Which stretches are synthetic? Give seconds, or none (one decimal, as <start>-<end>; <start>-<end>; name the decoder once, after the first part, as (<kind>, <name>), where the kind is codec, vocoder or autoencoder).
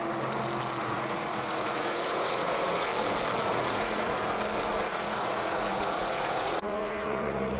0.8-2.9 (vocoder, Vocos); 3.4-4.2; 4.7-7.6